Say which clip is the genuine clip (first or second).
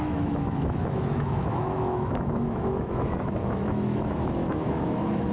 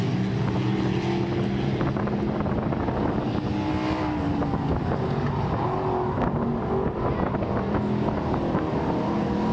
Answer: second